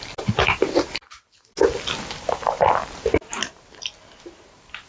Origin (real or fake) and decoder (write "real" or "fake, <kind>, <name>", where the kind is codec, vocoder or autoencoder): real